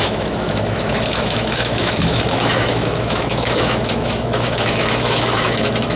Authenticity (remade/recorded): remade